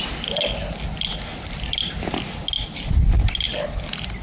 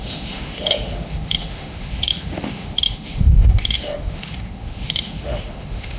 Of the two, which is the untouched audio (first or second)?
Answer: first